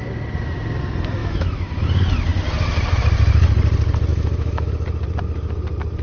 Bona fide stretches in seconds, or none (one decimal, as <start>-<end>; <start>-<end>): 0.0-1.2; 1.8-4.1; 4.7-6.0